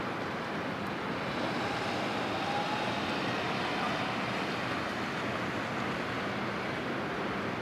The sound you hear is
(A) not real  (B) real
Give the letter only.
B